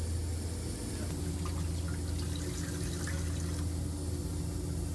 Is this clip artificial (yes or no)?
no